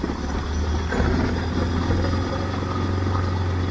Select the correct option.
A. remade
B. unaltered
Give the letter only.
B